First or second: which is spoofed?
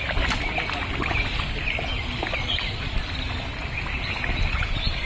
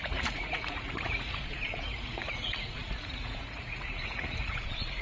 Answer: second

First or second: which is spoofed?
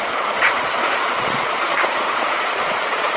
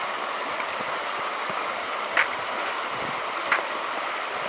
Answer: first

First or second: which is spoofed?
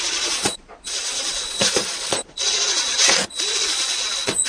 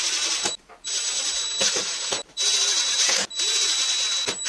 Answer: first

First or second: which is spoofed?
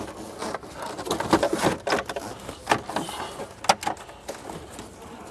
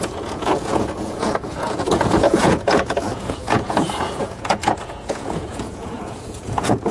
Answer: second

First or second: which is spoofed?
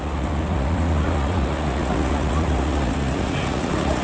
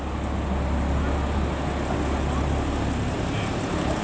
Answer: first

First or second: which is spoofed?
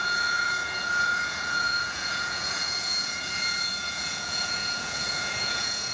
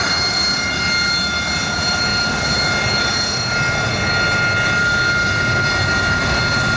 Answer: first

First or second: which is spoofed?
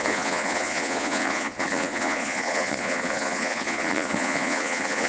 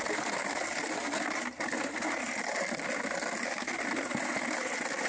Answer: first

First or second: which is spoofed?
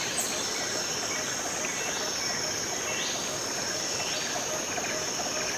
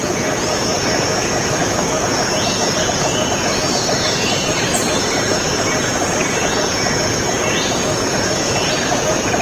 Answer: second